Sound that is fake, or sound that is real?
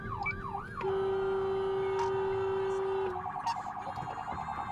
real